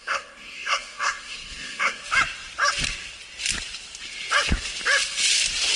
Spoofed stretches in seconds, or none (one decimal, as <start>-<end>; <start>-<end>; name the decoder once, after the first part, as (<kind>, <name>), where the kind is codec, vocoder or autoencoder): 0.0-2.0 (codec, SNAC)